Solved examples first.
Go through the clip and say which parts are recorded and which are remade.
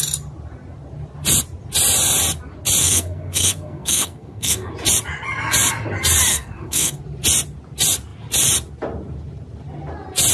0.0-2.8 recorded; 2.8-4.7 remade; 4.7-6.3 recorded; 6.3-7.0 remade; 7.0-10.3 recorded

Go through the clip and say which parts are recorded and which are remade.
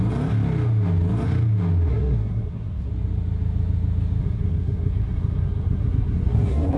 0.0-1.9 recorded; 1.9-2.9 remade; 2.9-4.2 recorded; 4.2-6.8 remade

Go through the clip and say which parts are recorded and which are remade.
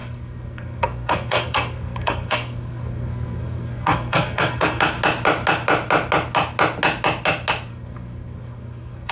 0.0-4.8 remade; 4.8-7.7 recorded; 7.7-9.1 remade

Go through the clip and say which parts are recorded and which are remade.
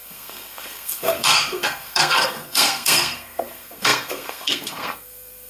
0.0-5.5 remade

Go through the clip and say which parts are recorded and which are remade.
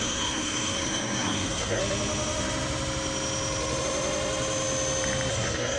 0.0-1.8 remade; 1.8-5.3 recorded; 5.3-5.8 remade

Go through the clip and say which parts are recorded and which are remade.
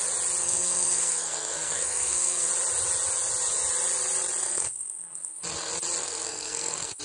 0.0-0.4 recorded; 0.4-2.5 remade; 2.5-4.4 recorded; 4.4-5.4 remade; 5.4-6.0 recorded; 6.0-7.0 remade